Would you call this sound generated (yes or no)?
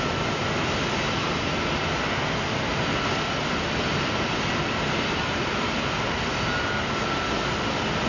no